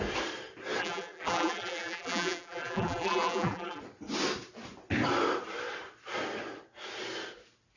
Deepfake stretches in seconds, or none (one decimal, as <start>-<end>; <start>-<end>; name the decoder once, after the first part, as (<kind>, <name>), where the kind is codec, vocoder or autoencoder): 0.8-3.8 (vocoder, BigVGAN v2)